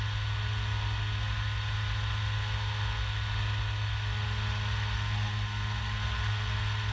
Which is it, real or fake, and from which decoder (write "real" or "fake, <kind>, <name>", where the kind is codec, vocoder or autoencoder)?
real